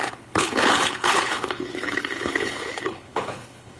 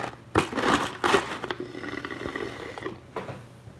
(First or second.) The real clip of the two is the second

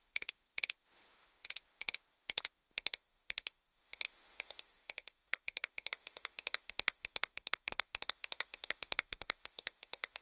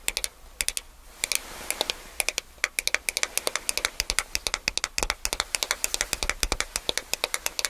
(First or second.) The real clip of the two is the second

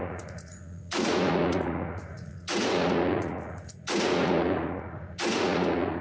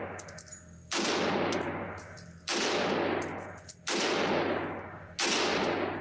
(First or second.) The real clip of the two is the second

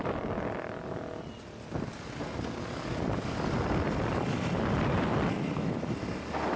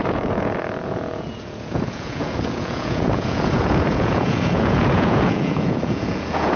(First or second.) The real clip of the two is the first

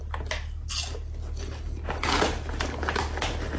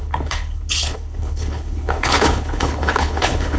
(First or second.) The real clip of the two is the first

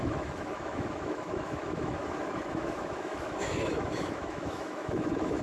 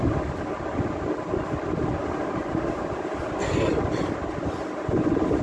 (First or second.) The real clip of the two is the second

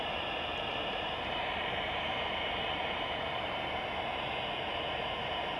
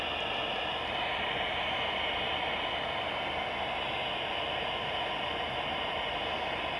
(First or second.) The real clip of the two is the second